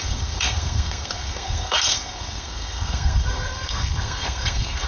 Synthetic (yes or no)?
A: yes